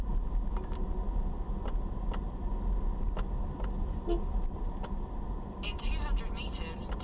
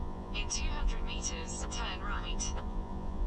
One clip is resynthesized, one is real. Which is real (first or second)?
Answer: first